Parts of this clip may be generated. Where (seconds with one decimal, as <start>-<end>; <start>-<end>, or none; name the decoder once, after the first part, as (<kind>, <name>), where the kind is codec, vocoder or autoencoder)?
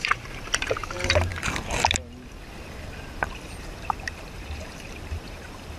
0.0-1.3 (vocoder, BigVGAN v2); 3.2-5.8